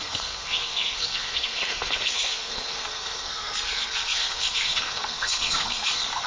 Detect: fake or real fake